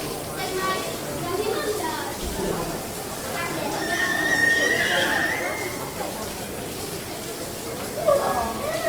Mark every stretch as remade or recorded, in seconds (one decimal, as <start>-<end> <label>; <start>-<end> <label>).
0.0-8.9 recorded